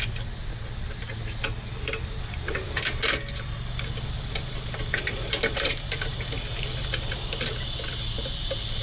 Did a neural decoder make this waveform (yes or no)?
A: no